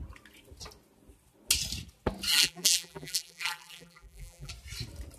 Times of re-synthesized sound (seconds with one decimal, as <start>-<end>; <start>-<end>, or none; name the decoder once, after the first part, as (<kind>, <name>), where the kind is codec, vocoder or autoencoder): 2.3-4.5 (vocoder, BigVGAN v2)